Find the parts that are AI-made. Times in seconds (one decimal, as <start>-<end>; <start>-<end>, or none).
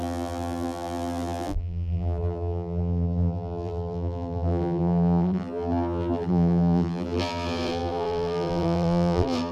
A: 0.0-9.5